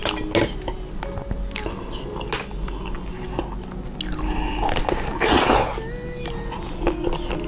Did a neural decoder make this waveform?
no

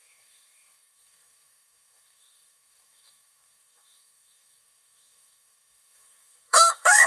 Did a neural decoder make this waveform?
yes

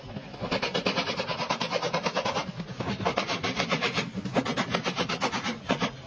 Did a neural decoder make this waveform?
no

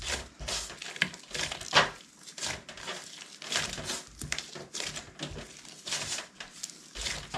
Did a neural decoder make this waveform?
no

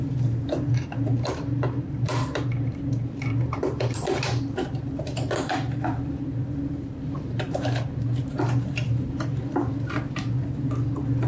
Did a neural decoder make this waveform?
yes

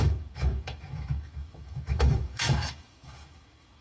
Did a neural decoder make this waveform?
yes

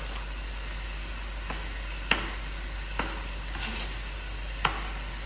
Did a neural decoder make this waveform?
no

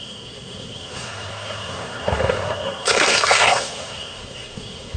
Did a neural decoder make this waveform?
yes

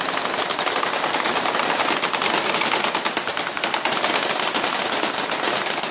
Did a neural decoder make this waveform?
no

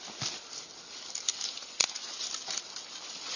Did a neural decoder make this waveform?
no